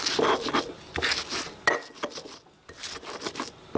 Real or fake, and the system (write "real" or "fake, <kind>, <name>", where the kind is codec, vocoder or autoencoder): real